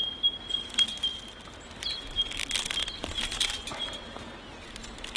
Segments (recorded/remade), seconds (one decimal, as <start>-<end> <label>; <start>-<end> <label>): 0.0-5.2 recorded